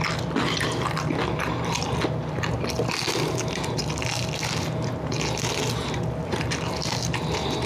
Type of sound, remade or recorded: recorded